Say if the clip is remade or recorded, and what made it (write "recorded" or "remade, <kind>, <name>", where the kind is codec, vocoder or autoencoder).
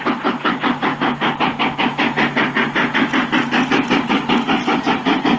recorded